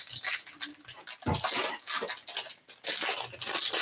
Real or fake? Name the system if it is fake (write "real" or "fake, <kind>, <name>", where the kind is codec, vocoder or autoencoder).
real